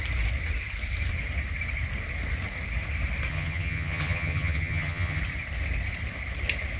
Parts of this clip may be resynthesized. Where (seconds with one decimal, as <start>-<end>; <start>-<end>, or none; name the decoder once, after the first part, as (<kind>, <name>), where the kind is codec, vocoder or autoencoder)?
3.3-5.2 (vocoder, HiFi-GAN)